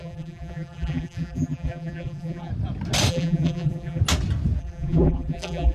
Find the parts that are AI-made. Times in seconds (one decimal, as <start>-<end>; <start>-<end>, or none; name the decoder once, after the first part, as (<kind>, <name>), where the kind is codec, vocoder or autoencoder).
0.0-2.5 (vocoder, BigVGAN v2); 3.1-4.0; 4.6-5.7